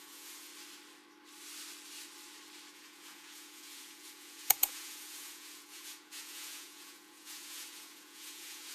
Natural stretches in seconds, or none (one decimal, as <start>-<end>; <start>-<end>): 0.5-2.7

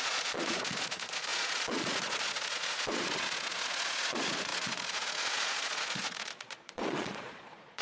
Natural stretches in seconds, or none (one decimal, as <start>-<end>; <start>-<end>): none

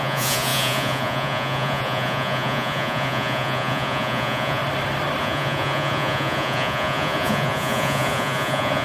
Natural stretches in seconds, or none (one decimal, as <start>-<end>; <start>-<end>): 4.6-5.2